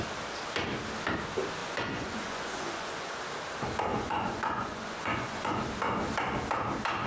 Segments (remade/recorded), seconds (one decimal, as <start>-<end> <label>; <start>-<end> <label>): 0.0-1.6 recorded; 1.6-3.2 remade; 3.2-3.9 recorded; 3.9-5.6 remade; 5.6-7.1 recorded